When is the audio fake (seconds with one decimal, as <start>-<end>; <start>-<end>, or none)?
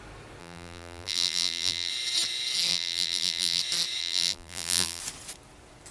0.4-1.9; 2.7-3.6; 4.0-5.0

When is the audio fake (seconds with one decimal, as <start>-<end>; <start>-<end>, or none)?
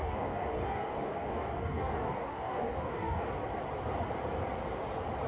0.0-3.2